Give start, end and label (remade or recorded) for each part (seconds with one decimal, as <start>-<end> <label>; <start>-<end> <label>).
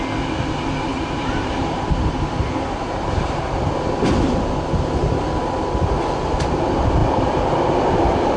0.0-0.9 recorded; 0.9-3.6 remade; 3.6-8.4 recorded